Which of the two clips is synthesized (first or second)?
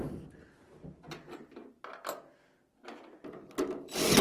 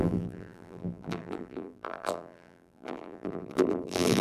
second